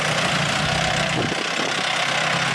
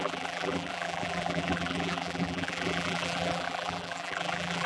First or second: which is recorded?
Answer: first